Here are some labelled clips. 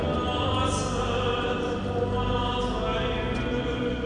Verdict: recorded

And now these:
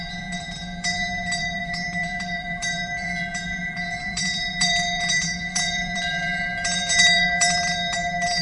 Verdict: remade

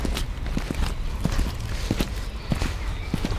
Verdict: recorded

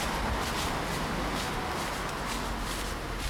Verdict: recorded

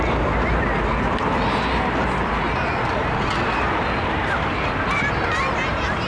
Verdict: recorded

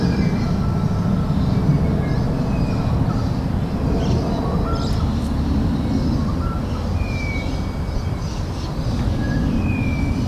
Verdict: recorded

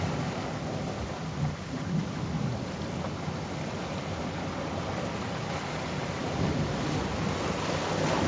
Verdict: recorded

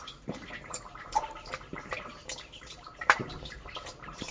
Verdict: remade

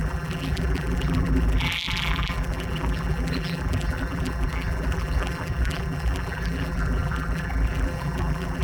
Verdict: remade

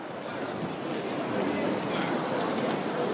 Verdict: recorded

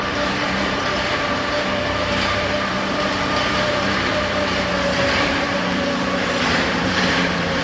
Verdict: remade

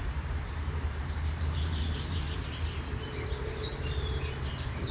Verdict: remade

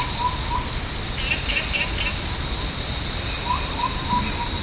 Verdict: recorded